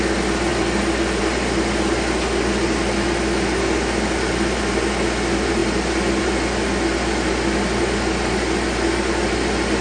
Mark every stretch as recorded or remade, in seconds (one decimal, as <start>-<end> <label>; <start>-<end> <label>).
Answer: 0.0-9.8 recorded

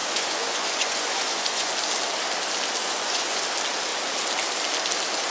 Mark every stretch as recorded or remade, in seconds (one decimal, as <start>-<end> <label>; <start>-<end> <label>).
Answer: 0.0-1.7 remade; 1.7-2.8 recorded; 2.8-3.4 remade; 3.4-5.3 recorded

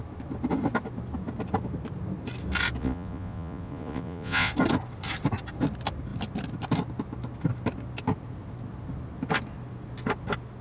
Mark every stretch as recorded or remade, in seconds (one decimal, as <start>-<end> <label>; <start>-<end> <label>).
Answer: 0.0-2.8 recorded; 2.8-4.5 remade; 4.5-10.6 recorded

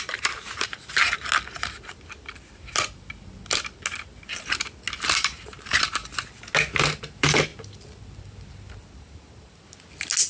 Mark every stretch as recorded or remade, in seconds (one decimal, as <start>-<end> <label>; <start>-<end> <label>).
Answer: 0.0-1.0 remade; 1.0-5.0 recorded; 5.0-6.0 remade; 6.0-6.8 recorded; 6.8-7.5 remade; 7.5-10.3 recorded